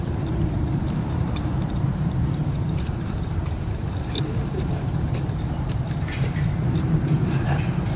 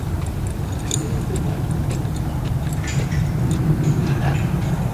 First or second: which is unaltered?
second